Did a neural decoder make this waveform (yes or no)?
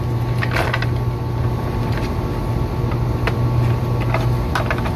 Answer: no